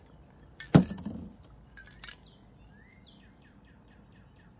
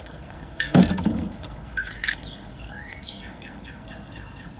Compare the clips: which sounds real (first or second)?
first